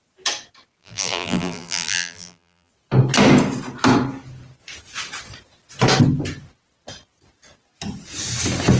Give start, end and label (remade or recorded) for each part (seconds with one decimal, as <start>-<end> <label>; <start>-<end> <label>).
0.0-0.8 recorded; 0.8-2.7 remade; 2.7-8.8 recorded